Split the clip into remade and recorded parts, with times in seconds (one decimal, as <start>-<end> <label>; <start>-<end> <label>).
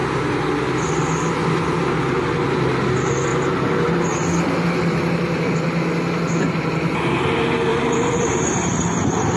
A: 0.0-7.7 recorded; 7.7-8.6 remade; 8.6-9.4 recorded